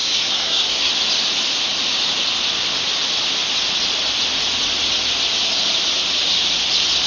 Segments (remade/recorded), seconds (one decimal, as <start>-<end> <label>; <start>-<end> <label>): 0.0-0.9 remade; 0.9-7.1 recorded